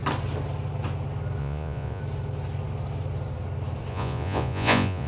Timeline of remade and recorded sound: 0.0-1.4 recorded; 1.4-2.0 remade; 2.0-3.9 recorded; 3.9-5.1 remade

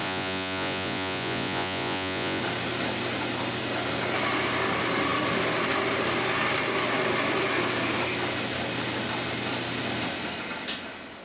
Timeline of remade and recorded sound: 0.0-2.4 remade; 2.4-11.2 recorded

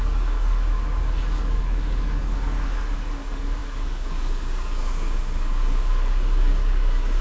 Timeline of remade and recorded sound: 0.0-7.2 remade

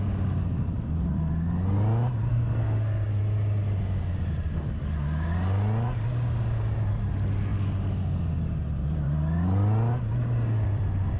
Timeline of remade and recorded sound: 0.0-2.3 recorded; 2.3-3.2 remade; 3.2-11.2 recorded

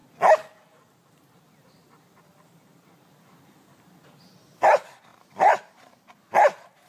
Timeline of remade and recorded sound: 0.0-1.1 recorded; 1.1-6.9 remade

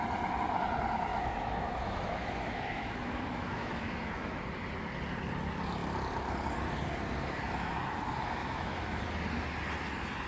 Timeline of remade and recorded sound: 0.0-1.1 recorded; 1.1-4.4 remade; 4.4-8.4 recorded; 8.4-9.0 remade; 9.0-10.3 recorded

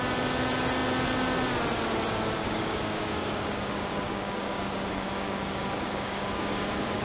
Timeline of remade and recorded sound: 0.0-2.4 recorded; 2.4-6.6 remade; 6.6-7.0 recorded